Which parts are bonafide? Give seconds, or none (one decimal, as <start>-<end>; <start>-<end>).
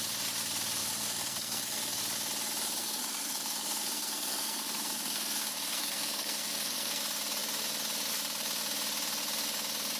0.0-0.8; 2.0-2.8; 7.0-10.0